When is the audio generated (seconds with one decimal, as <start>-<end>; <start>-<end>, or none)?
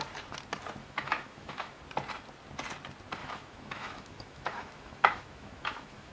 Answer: 0.8-1.8; 3.2-6.1